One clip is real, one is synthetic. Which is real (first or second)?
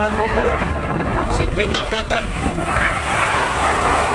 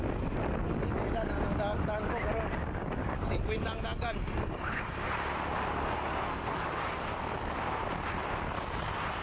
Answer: second